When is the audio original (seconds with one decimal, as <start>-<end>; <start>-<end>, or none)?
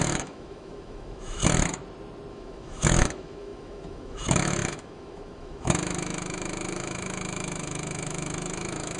1.4-2.3